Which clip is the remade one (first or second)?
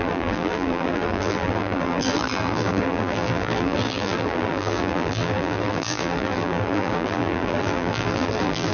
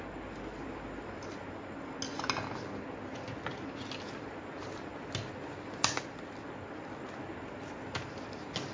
first